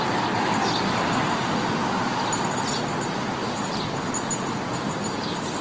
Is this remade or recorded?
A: recorded